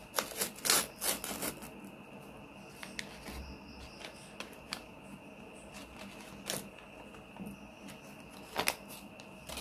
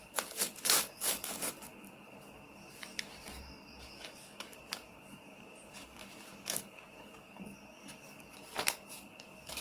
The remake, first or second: second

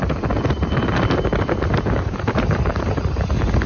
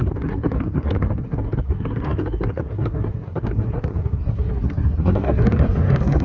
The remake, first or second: second